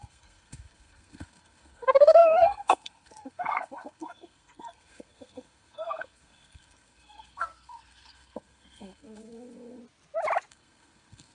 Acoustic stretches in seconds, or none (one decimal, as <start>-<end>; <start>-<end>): 9.8-10.5